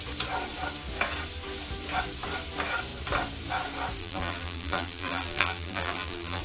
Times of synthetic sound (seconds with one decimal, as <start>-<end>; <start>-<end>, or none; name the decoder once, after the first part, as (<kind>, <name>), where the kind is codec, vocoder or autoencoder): 4.0-6.4 (vocoder, BigVGAN v2)